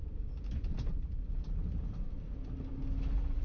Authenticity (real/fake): real